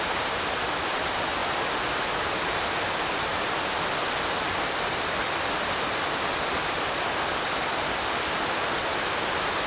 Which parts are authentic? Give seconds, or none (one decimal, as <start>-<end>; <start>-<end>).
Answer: 0.0-9.7